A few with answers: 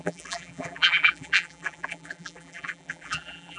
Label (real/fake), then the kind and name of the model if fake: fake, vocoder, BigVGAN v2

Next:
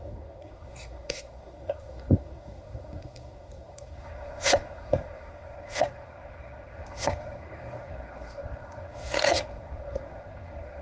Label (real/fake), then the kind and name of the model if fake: fake, codec, SNAC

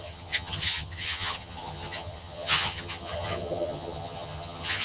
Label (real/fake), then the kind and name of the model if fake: fake, vocoder, HiFi-GAN